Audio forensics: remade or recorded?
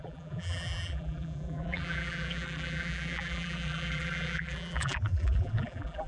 remade